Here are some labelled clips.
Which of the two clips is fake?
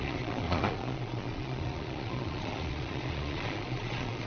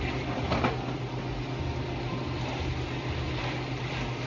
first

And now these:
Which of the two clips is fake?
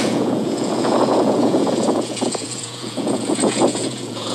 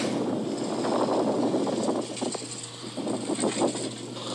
first